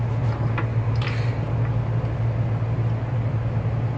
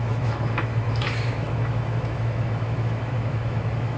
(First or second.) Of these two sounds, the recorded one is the first